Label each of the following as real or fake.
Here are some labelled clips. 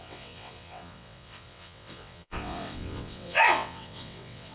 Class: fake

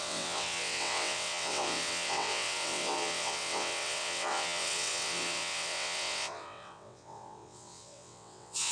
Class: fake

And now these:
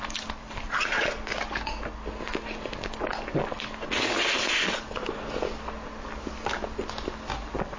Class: real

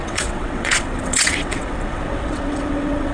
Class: fake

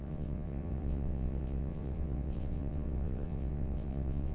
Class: fake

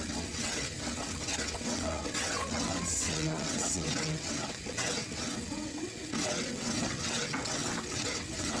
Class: fake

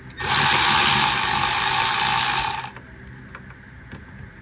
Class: real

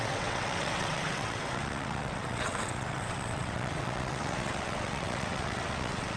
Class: fake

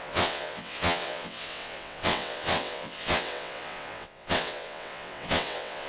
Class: fake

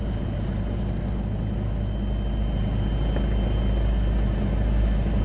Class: real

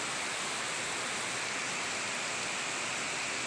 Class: real